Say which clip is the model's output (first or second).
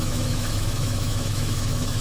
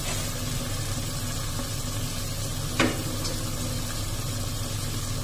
first